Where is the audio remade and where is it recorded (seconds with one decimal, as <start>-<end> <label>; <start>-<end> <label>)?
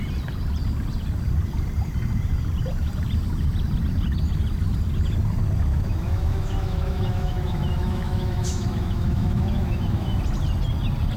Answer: 0.0-5.7 recorded; 5.7-10.2 remade; 10.2-11.2 recorded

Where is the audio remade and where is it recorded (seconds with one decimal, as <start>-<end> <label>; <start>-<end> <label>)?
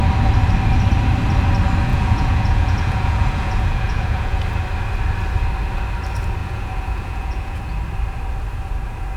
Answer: 0.0-1.9 recorded; 1.9-4.4 remade; 4.4-6.4 recorded; 6.4-7.6 remade; 7.6-9.2 recorded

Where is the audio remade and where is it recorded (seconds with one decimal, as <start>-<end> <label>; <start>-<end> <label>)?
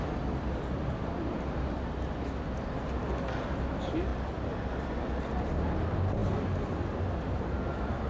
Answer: 0.0-8.1 recorded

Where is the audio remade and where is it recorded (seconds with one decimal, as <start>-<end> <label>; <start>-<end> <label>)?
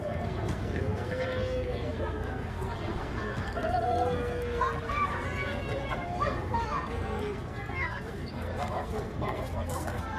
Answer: 0.0-10.2 remade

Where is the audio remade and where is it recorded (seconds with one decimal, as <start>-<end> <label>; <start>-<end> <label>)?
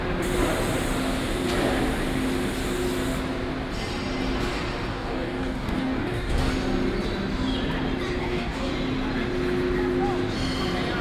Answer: 0.0-4.9 recorded; 4.9-6.5 remade; 6.5-8.2 recorded; 8.2-8.7 remade; 8.7-11.0 recorded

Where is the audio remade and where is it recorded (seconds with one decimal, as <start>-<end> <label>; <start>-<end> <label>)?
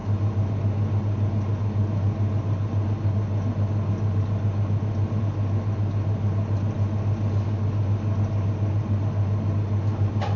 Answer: 0.0-10.4 recorded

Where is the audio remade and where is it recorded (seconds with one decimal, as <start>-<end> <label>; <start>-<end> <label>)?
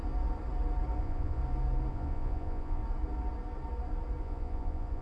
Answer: 0.0-1.0 recorded; 1.0-1.4 remade; 1.4-1.9 recorded; 1.9-2.8 remade; 2.8-4.2 recorded; 4.2-5.0 remade